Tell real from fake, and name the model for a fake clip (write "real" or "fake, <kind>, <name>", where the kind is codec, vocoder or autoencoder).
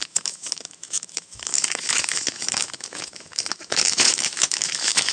fake, autoencoder, DAC-VAE